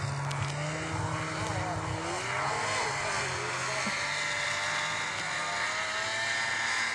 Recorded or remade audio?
recorded